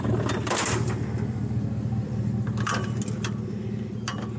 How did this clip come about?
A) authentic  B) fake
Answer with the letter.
A